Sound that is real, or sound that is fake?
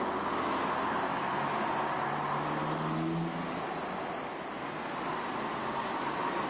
real